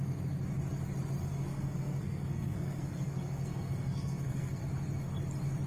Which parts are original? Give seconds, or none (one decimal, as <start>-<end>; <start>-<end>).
0.0-1.2; 4.6-5.7